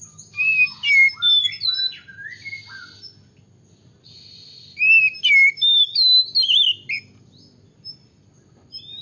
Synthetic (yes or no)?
no